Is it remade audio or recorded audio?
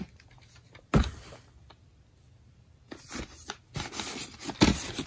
recorded